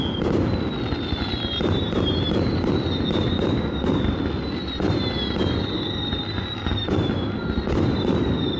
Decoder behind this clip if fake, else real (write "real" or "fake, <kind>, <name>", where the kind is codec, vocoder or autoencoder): real